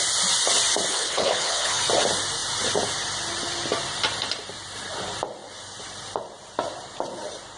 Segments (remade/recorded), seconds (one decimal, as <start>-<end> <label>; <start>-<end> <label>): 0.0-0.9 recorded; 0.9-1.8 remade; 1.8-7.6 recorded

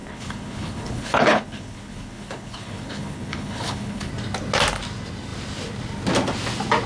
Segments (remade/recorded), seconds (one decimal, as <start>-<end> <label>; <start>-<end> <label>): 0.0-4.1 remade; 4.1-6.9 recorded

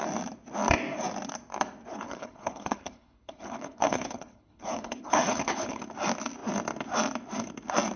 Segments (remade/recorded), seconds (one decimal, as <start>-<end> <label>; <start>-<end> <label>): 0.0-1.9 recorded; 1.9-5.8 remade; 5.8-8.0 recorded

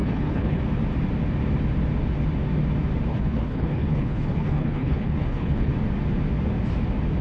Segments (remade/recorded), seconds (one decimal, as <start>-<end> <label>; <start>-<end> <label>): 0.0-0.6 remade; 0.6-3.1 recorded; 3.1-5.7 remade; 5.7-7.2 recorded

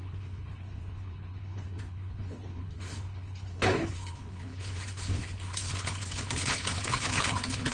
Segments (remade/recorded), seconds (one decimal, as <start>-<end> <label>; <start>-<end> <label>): 0.0-7.7 remade

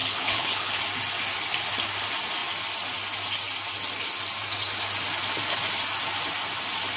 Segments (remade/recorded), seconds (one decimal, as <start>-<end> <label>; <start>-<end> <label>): 0.0-0.8 remade; 0.8-7.0 recorded